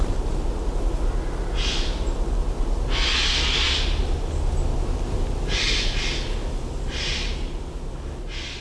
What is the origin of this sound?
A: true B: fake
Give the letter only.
A